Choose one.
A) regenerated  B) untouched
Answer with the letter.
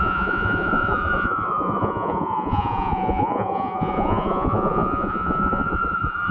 A